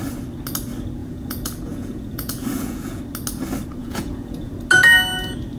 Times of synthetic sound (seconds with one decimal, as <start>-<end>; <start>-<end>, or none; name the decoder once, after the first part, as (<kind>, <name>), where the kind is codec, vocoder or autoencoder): 1.0-3.0 (vocoder, Vocos); 3.8-4.5